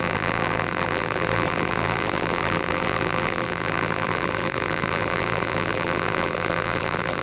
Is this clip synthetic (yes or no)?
yes